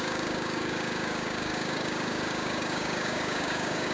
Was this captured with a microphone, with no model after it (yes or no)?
no